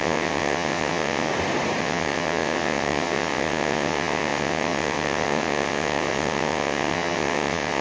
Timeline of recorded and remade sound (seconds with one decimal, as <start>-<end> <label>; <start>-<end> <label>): 0.0-1.3 remade; 1.3-1.8 recorded; 1.8-7.8 remade